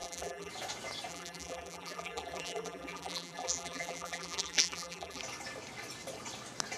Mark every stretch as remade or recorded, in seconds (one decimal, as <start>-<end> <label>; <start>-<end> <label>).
0.0-0.5 remade; 0.5-1.1 recorded; 1.1-5.2 remade; 5.2-6.8 recorded